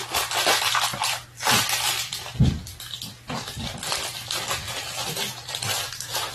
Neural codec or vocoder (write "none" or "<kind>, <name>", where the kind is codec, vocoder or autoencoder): vocoder, BigVGAN v2